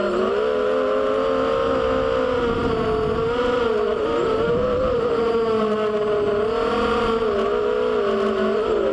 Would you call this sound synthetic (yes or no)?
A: no